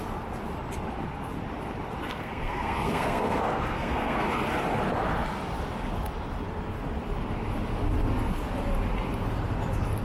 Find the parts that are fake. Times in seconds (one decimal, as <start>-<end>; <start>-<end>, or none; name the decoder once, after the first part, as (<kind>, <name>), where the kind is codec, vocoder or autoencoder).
2.1-4.3 (codec, SNAC)